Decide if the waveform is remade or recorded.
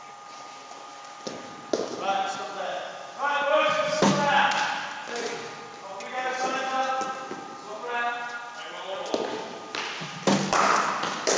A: recorded